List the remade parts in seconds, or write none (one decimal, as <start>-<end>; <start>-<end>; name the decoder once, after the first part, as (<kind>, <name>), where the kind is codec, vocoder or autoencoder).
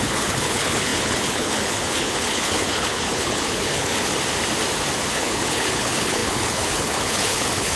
0.0-4.1 (codec, HILCodec); 5.1-7.8